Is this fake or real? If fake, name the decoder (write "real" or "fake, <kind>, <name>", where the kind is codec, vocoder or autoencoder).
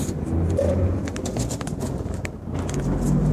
real